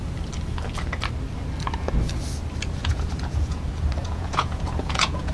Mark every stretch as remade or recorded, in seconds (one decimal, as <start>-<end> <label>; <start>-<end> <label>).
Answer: 0.0-2.8 recorded; 2.8-3.6 remade; 3.6-4.0 recorded; 4.0-5.3 remade